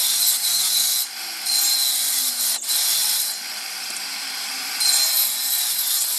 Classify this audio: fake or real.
real